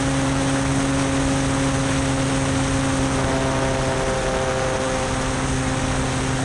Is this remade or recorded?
recorded